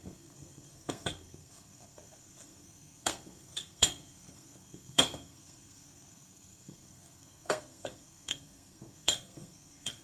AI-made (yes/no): yes